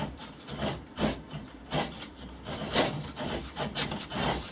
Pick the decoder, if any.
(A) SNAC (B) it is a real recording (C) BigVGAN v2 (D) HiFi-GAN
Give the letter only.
C